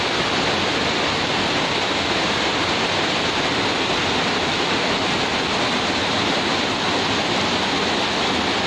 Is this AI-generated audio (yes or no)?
no